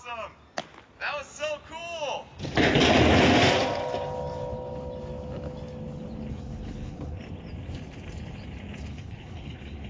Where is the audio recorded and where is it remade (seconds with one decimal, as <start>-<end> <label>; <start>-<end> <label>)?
0.0-6.3 recorded; 6.3-7.2 remade; 7.2-8.9 recorded; 8.9-9.9 remade